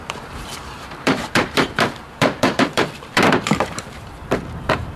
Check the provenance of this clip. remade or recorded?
remade